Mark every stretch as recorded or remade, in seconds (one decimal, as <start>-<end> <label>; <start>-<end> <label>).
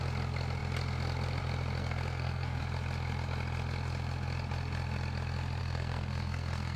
0.0-1.8 recorded; 1.8-2.6 remade; 2.6-5.6 recorded; 5.6-6.8 remade